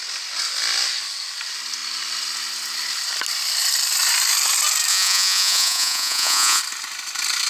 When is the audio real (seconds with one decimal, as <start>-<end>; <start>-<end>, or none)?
0.0-4.9; 6.6-7.5